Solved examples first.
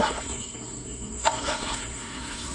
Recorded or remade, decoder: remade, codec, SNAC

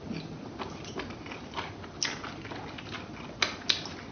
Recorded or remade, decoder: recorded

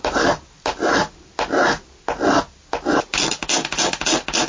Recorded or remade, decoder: recorded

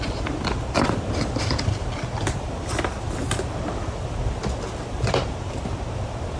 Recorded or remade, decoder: recorded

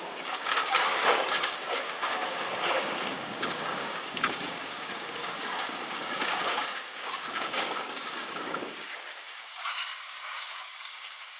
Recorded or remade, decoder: remade, codec, DAC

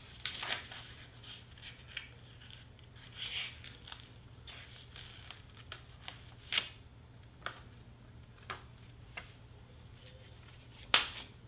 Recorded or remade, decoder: recorded